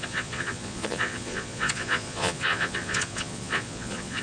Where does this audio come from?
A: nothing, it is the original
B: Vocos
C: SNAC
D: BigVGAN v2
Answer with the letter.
B